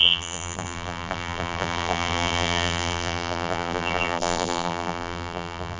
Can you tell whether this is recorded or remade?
remade